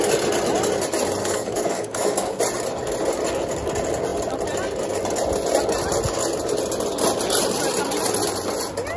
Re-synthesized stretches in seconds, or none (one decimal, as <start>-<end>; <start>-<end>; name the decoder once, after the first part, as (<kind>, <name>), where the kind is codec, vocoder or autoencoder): 1.2-2.4 (codec, DAC)